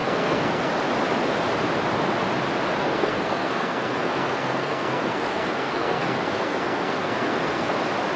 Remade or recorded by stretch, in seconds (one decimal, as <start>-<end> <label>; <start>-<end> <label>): 0.0-0.7 remade; 0.7-2.8 recorded; 2.8-7.7 remade; 7.7-8.2 recorded